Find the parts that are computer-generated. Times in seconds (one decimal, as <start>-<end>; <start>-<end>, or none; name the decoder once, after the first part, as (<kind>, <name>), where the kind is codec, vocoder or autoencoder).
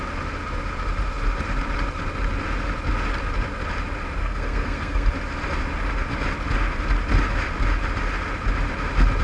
4.2-5.1 (codec, SNAC)